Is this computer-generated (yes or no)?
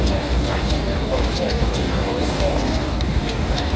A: yes